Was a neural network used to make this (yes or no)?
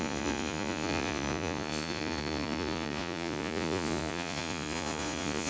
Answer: yes